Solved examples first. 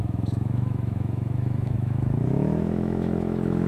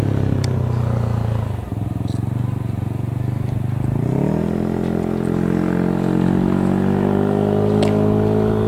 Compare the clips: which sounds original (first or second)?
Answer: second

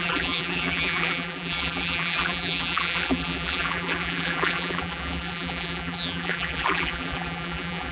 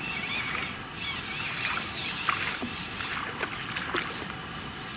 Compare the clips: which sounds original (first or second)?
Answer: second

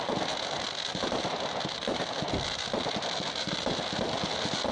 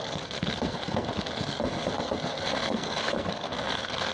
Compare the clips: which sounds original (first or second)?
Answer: first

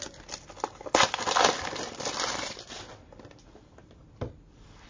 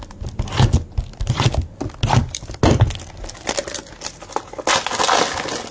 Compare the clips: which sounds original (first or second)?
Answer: second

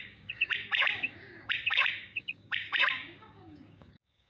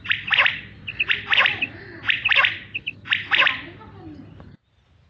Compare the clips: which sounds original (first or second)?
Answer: second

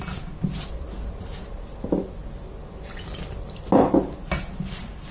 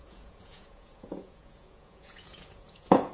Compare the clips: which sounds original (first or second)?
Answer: first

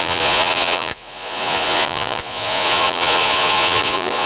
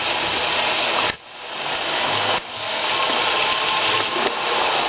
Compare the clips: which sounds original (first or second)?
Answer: second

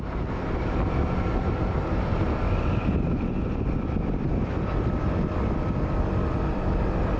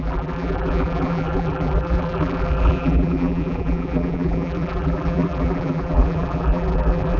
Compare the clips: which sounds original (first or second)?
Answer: first